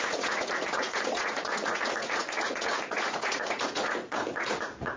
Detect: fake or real fake